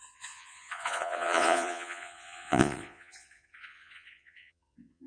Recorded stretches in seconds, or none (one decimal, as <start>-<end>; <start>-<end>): none

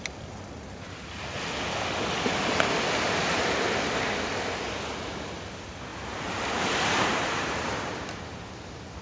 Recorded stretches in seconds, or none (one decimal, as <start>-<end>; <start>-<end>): 0.0-5.9; 8.5-9.0

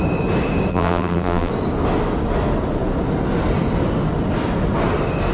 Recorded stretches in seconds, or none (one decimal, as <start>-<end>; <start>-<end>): 0.0-0.7; 1.5-5.3

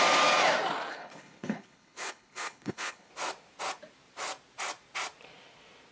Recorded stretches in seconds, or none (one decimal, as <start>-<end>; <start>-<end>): 0.0-0.9; 3.1-5.9

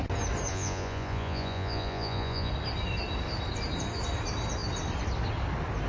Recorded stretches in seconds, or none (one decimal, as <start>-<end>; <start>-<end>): 0.0-0.5; 2.5-5.9